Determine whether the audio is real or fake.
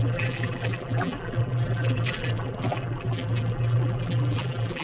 fake